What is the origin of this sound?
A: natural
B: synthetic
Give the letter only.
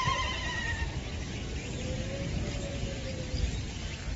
A